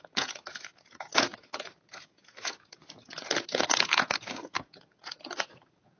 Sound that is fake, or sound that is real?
fake